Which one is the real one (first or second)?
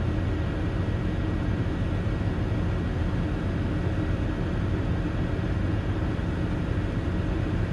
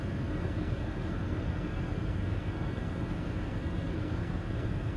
first